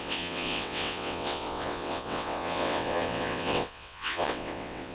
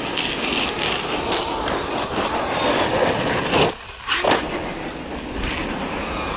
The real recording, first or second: second